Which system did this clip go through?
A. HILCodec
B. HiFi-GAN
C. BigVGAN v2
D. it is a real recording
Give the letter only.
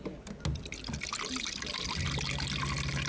D